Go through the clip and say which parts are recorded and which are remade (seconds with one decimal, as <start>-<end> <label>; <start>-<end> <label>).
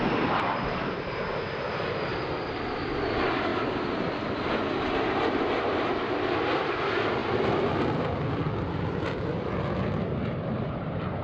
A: 0.0-2.1 remade; 2.1-3.0 recorded; 3.0-3.5 remade; 3.5-6.8 recorded; 6.8-7.2 remade; 7.2-10.1 recorded; 10.1-11.2 remade